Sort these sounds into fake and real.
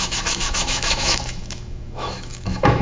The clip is fake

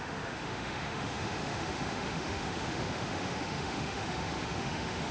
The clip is fake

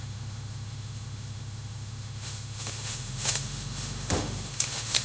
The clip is fake